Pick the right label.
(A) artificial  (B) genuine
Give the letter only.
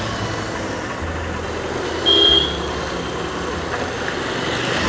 B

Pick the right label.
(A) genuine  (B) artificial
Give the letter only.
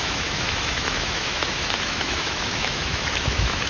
B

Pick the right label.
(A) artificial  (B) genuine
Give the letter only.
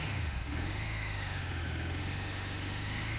A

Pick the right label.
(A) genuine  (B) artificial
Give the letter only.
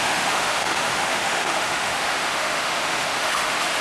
B